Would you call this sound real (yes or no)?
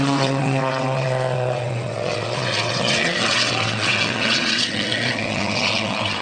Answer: no